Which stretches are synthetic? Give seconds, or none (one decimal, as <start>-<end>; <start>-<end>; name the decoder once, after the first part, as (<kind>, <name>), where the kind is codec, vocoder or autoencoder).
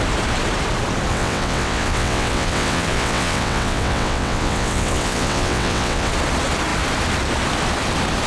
1.1-6.1 (vocoder, WaveNeXt)